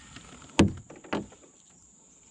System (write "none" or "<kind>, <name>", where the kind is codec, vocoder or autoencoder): none